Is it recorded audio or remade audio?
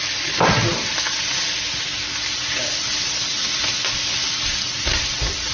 recorded